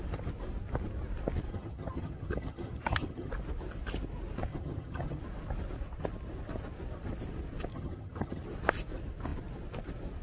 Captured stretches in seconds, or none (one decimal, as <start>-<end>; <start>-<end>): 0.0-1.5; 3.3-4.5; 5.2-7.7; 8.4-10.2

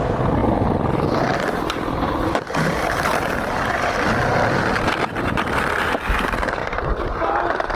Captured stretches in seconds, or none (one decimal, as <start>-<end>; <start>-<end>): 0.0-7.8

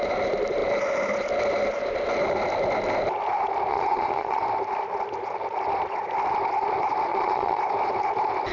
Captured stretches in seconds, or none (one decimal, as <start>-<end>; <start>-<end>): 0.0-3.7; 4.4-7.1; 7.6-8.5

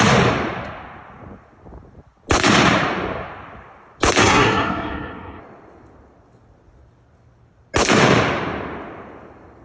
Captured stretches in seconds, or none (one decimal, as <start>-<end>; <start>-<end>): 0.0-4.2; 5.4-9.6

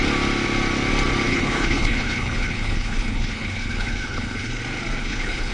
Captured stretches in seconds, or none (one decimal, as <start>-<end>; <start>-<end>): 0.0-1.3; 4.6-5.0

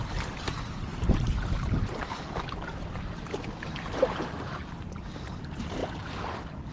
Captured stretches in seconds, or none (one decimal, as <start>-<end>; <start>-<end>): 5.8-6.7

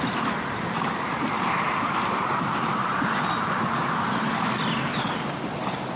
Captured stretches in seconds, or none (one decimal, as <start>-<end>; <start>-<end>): 0.0-6.0